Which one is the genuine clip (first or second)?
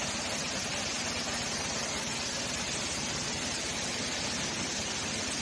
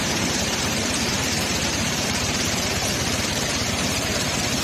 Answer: first